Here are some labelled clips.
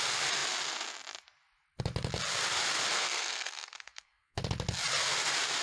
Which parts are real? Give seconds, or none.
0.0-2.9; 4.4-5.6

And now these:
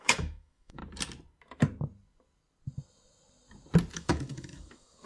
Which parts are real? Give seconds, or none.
0.8-3.9

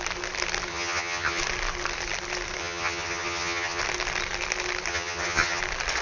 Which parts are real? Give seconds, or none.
0.0-0.7; 1.4-2.6; 3.8-4.9; 5.6-6.0

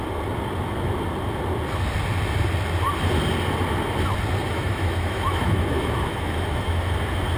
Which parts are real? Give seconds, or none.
0.0-4.4; 6.9-7.4